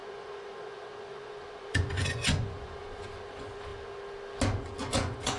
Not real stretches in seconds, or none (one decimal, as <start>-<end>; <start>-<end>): 0.0-3.7; 4.8-5.4